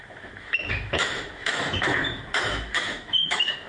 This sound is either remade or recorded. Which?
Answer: remade